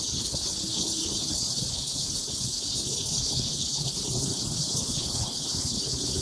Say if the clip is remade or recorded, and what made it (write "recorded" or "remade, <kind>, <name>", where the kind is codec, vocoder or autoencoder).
remade, codec, HILCodec